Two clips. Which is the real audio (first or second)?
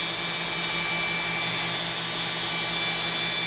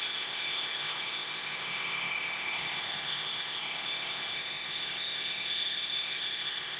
first